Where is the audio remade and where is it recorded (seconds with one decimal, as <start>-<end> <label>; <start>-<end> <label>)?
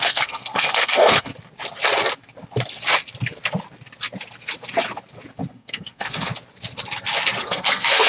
0.0-1.3 remade; 1.3-5.5 recorded; 5.5-6.3 remade; 6.3-7.4 recorded; 7.4-8.1 remade